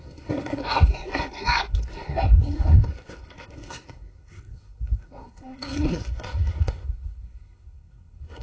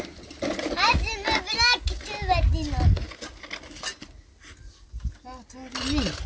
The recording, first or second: second